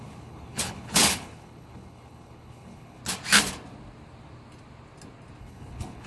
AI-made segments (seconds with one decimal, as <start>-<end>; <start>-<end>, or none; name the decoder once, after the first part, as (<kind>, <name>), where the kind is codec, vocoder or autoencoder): 0.0-3.0 (codec, HILCodec); 5.4-6.1